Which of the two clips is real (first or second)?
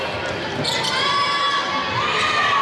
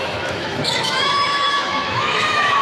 first